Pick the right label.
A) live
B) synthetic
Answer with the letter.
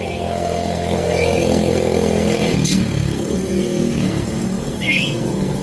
B